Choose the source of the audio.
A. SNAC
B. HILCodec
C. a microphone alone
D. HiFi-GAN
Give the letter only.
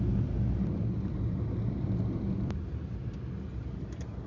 C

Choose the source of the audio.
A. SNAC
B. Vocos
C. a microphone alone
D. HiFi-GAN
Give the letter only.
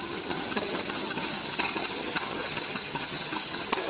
D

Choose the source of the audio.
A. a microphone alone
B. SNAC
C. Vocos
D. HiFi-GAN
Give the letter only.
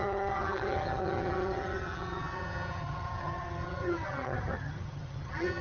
D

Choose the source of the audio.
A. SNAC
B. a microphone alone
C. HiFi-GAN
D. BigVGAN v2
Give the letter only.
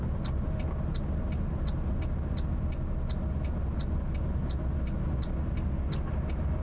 B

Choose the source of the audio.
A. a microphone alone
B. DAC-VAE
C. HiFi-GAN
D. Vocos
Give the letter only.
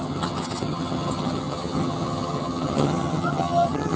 C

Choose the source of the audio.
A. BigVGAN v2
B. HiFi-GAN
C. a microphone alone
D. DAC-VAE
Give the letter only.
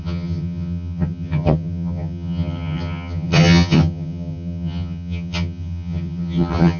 B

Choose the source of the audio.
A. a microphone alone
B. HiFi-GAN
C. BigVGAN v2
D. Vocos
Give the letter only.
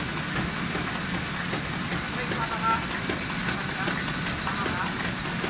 A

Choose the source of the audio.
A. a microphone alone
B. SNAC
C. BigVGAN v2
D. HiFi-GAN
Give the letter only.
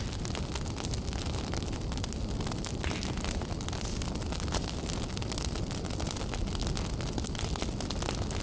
A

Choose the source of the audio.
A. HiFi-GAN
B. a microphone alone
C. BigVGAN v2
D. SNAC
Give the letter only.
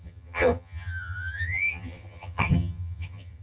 A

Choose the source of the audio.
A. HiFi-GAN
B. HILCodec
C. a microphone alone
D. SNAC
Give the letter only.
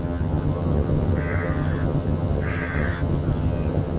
A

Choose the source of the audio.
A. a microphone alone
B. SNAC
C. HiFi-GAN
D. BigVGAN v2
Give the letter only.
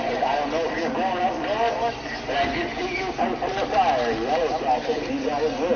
A